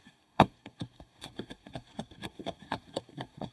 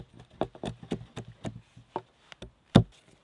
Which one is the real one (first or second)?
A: second